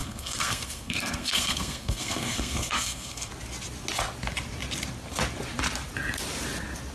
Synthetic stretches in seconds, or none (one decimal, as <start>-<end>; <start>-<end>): 0.0-3.3